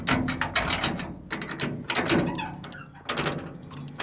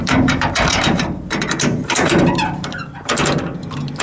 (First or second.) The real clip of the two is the first